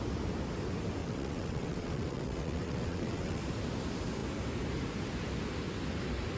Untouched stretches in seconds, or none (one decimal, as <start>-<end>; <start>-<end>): 0.0-1.0; 3.4-6.4